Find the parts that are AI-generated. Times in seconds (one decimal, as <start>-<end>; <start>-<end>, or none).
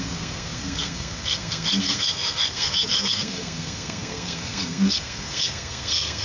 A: 0.0-6.2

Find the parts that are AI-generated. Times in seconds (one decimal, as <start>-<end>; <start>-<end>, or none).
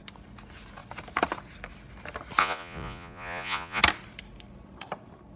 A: 2.4-3.8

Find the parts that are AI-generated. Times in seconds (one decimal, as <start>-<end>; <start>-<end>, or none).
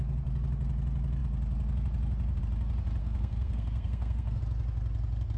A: 3.0-4.4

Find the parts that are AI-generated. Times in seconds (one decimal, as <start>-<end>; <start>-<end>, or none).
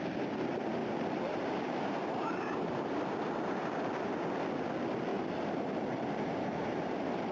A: 0.8-3.0; 5.1-7.3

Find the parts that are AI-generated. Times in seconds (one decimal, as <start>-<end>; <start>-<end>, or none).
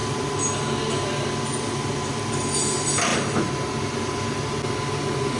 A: none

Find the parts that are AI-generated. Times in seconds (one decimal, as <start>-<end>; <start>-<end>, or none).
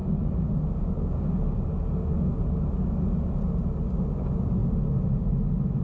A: none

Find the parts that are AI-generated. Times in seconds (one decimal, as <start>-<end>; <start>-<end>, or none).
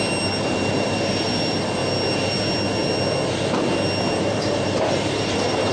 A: 0.0-1.8; 4.2-5.7